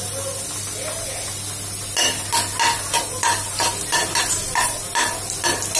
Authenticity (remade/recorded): recorded